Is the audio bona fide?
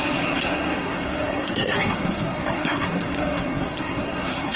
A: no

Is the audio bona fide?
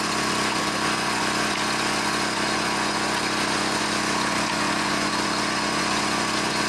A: no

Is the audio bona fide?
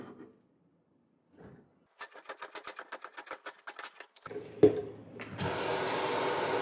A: yes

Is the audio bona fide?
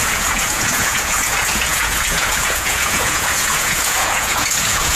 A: no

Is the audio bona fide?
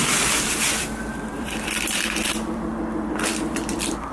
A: no